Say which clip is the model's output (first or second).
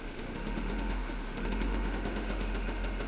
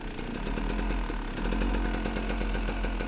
first